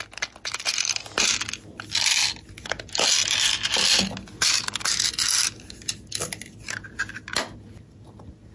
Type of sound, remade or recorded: recorded